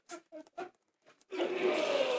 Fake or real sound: fake